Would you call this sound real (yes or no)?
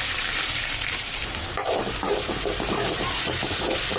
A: no